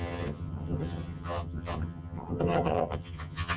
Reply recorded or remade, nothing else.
remade